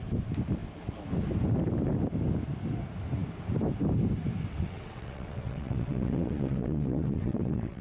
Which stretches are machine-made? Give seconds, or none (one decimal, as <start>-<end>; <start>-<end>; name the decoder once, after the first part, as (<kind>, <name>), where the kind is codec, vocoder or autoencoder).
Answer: 4.5-7.8 (vocoder, WaveNeXt)